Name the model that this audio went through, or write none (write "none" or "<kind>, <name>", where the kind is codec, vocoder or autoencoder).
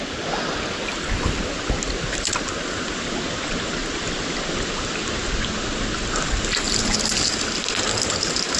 none